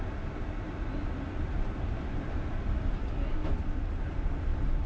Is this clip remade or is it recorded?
recorded